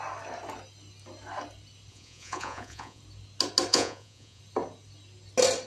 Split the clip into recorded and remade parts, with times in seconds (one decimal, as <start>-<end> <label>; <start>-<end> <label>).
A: 0.0-1.9 recorded; 1.9-3.0 remade; 3.0-3.7 recorded; 3.7-4.4 remade; 4.4-5.7 recorded